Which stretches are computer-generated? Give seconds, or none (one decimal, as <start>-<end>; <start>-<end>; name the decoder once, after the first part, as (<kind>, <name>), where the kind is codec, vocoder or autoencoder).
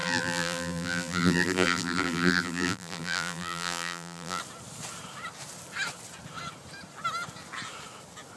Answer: 0.0-4.4 (vocoder, BigVGAN v2)